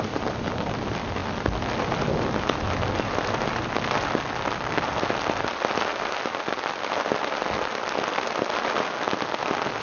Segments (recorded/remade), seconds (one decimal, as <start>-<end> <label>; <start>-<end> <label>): 0.0-9.8 recorded